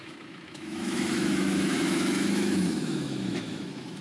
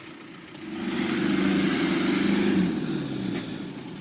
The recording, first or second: second